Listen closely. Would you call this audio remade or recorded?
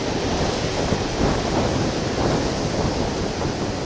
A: recorded